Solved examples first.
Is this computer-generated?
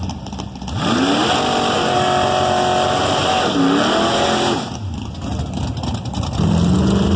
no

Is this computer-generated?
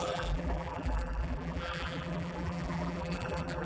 yes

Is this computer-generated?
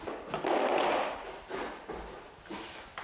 no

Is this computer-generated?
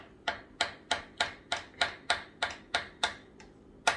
no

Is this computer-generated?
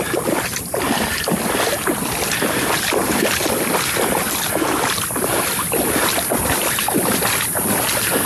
no